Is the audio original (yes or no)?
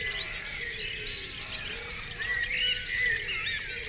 yes